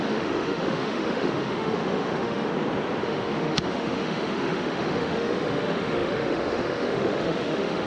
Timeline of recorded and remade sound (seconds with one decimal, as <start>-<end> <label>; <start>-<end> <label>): 0.0-2.5 remade; 2.5-3.0 recorded; 3.0-7.9 remade